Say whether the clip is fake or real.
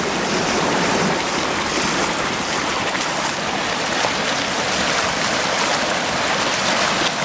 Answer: real